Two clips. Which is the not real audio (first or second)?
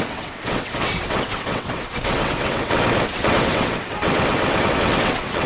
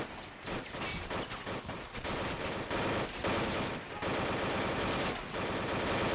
first